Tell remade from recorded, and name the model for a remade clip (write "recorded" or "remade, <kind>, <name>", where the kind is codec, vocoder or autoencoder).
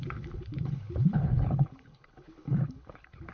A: remade, codec, HILCodec